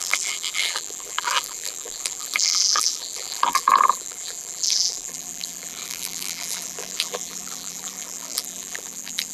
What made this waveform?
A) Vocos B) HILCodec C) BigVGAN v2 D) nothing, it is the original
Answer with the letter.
C